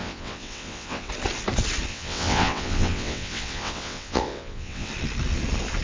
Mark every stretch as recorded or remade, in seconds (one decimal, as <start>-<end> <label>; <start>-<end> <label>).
0.0-1.1 remade; 1.1-1.9 recorded; 1.9-4.9 remade; 4.9-5.8 recorded